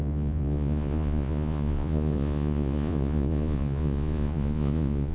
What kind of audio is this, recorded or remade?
remade